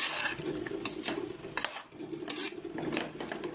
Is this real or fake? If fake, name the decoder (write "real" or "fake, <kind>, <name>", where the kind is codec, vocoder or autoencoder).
real